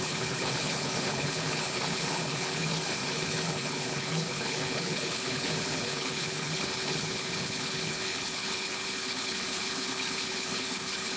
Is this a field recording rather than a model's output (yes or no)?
no